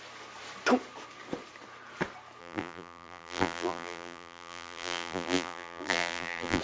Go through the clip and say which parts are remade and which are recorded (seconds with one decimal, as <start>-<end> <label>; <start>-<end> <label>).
0.0-2.4 recorded; 2.4-6.6 remade